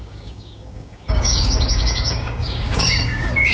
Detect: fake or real fake